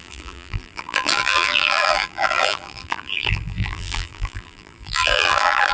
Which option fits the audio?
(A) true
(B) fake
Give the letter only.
B